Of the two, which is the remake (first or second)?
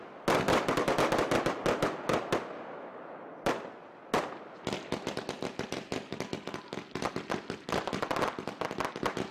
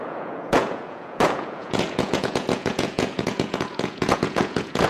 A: second